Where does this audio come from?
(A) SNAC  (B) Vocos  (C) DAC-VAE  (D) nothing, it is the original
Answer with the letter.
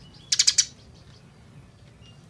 D